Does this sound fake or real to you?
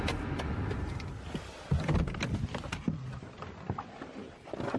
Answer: real